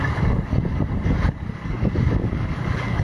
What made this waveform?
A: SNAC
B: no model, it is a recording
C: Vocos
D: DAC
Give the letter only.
D